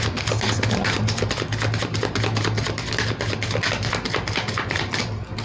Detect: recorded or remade recorded